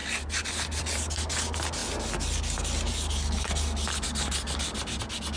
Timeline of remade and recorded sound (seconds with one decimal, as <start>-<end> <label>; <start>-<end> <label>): 0.0-5.4 recorded